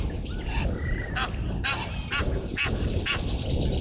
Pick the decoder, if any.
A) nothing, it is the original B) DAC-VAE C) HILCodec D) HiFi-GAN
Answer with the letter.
A